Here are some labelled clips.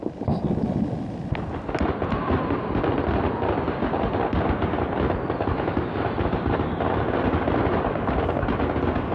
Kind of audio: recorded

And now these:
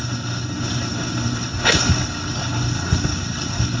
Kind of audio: remade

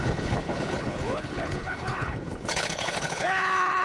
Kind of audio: remade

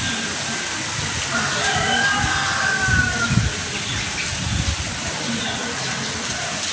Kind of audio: recorded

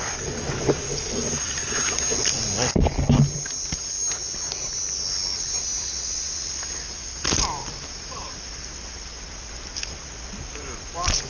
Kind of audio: recorded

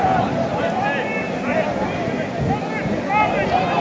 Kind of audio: recorded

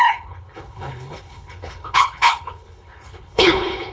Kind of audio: remade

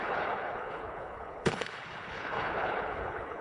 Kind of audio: remade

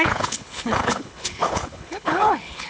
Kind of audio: remade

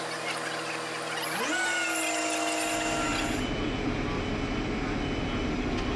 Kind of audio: recorded